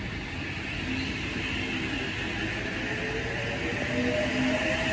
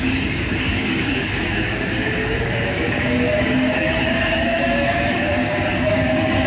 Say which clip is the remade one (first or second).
second